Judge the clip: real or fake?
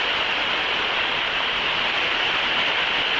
fake